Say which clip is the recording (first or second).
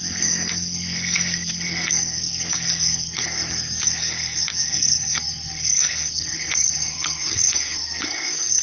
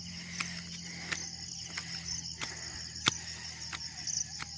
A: second